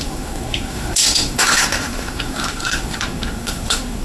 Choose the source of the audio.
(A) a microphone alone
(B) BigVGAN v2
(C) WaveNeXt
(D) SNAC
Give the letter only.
D